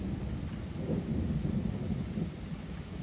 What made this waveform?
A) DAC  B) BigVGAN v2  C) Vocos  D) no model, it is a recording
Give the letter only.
B